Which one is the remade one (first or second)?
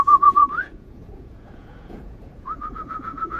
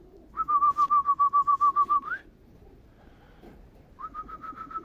first